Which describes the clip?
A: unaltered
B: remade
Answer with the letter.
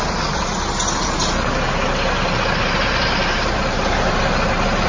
A